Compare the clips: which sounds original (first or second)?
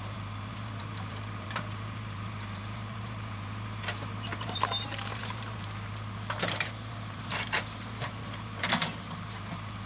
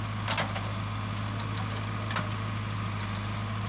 second